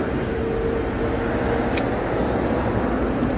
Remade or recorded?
recorded